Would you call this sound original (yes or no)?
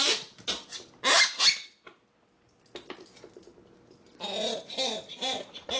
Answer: yes